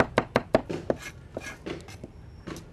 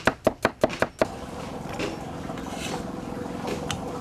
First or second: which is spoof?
first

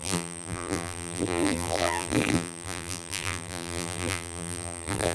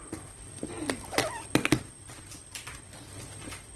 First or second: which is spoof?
first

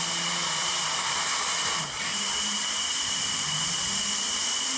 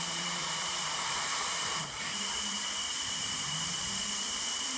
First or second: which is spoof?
second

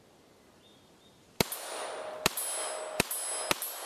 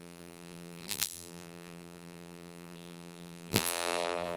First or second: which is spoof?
second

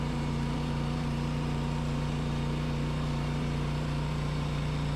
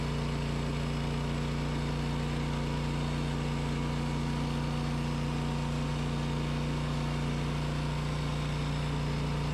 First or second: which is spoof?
first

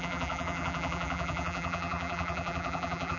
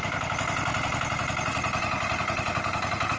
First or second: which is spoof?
first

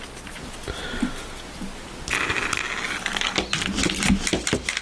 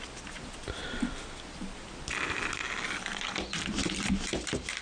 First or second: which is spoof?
second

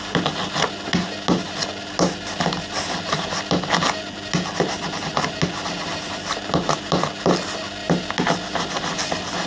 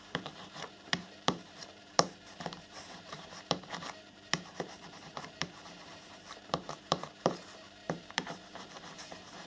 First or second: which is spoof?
second